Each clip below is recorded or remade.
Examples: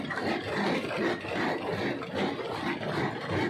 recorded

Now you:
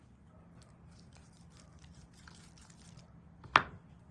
recorded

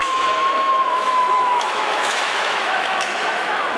remade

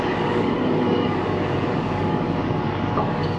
remade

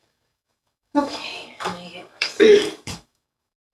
remade